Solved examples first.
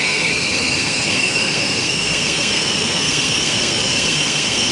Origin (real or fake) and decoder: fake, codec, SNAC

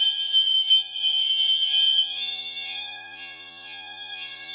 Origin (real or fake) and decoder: fake, vocoder, Vocos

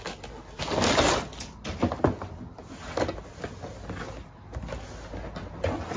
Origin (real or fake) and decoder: real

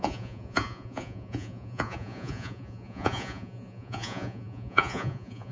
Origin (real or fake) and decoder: fake, vocoder, Vocos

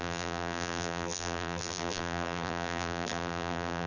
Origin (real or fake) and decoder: fake, vocoder, BigVGAN v2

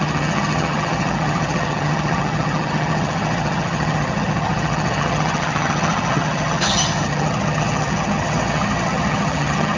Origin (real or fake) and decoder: fake, vocoder, HiFi-GAN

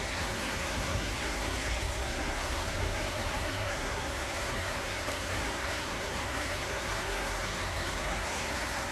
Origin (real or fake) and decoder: fake, codec, SNAC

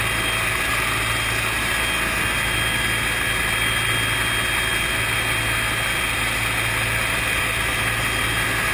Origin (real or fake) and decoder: real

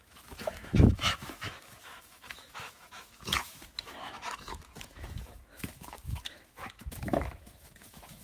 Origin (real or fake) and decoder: fake, autoencoder, DAC-VAE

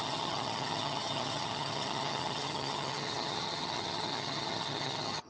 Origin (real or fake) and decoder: fake, vocoder, HiFi-GAN